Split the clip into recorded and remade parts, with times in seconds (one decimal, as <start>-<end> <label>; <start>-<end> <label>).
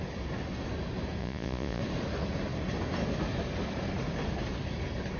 0.0-1.2 recorded; 1.2-1.8 remade; 1.8-5.2 recorded